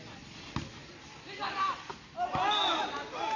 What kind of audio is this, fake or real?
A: real